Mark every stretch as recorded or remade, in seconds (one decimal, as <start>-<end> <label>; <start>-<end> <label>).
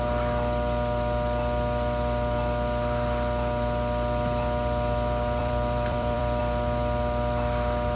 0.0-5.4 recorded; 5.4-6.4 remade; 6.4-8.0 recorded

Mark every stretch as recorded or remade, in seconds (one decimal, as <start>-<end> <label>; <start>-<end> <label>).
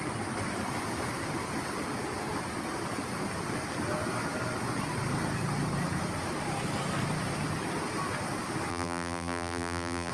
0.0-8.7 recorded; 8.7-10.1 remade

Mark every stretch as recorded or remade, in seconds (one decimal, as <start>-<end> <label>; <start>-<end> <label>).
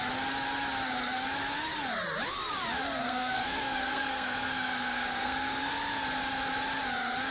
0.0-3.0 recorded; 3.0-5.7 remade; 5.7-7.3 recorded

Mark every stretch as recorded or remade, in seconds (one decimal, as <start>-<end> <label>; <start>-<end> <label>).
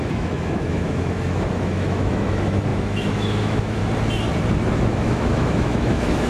0.0-3.8 remade; 3.8-4.7 recorded; 4.7-6.3 remade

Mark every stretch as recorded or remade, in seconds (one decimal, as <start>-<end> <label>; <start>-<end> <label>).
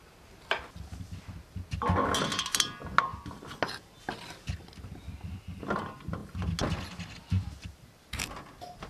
0.0-8.9 recorded